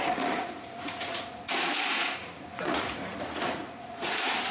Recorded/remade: remade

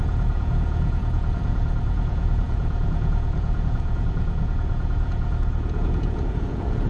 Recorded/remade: remade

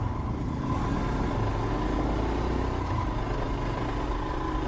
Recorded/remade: recorded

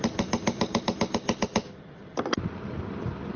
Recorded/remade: recorded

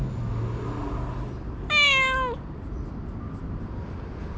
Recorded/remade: recorded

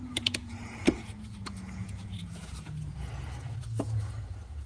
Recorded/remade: remade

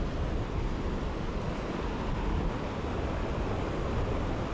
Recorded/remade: recorded